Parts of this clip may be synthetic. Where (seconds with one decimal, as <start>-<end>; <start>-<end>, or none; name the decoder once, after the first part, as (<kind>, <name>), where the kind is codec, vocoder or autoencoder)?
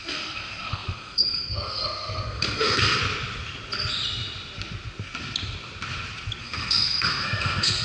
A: 0.0-3.0 (codec, SNAC); 6.4-7.8